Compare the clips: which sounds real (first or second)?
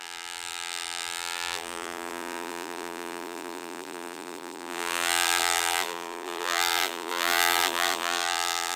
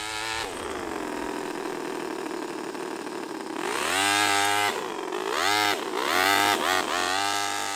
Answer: second